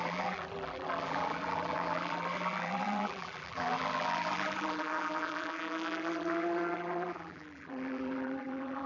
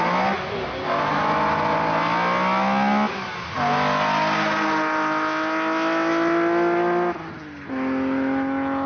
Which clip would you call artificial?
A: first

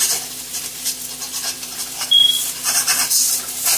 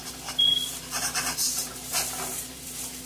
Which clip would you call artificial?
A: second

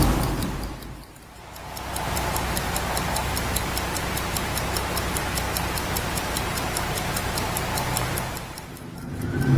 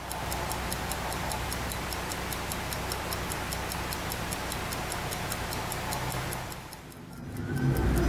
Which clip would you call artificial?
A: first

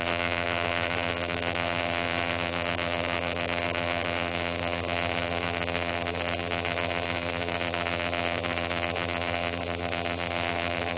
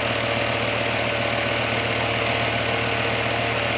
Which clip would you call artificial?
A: first